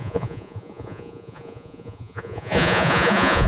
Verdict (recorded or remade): remade